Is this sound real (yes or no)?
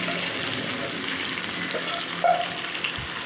yes